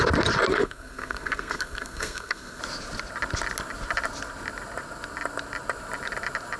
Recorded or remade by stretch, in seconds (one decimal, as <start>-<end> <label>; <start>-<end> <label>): 0.0-0.5 recorded; 0.5-2.6 remade; 2.6-6.6 recorded